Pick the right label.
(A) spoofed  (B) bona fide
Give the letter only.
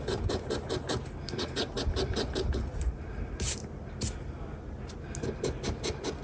B